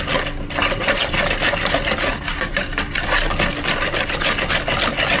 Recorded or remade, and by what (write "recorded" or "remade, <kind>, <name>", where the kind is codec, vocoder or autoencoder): recorded